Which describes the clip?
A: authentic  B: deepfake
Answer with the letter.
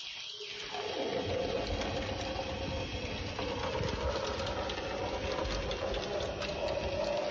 A